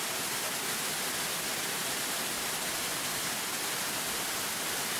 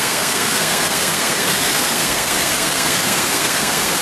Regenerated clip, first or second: second